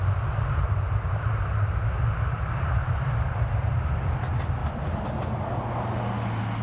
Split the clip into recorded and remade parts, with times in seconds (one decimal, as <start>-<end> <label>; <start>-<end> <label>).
0.0-6.6 recorded